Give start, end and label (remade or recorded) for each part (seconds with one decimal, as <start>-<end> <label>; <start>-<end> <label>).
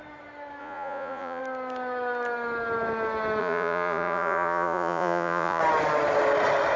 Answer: 0.0-0.6 recorded; 0.6-1.4 remade; 1.4-3.4 recorded; 3.4-5.6 remade; 5.6-6.8 recorded